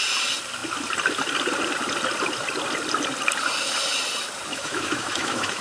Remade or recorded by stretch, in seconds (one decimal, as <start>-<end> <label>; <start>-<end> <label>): 0.0-4.5 recorded; 4.5-5.6 remade